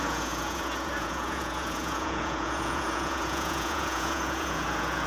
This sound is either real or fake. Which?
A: fake